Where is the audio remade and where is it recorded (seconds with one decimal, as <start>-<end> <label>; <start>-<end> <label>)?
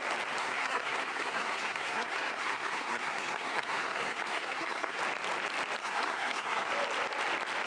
0.0-0.4 recorded; 0.4-5.0 remade; 5.0-5.8 recorded; 5.8-6.7 remade; 6.7-7.7 recorded